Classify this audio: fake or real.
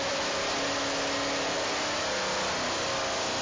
real